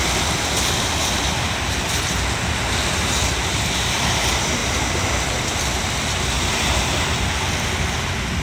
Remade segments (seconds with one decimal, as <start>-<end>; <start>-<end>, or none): none